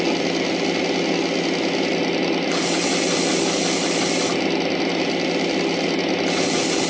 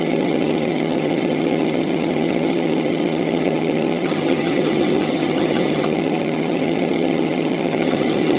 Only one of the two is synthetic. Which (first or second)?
second